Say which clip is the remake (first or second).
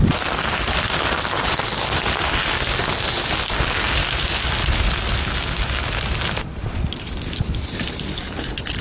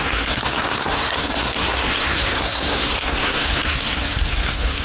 second